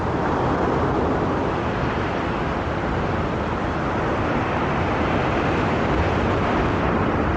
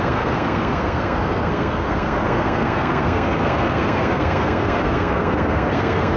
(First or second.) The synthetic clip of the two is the second